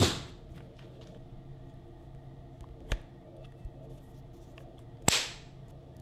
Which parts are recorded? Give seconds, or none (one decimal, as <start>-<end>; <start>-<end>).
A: 0.0-6.0